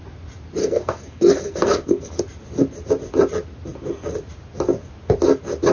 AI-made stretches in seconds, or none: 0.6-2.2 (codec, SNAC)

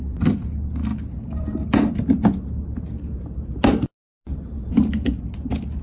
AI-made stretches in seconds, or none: none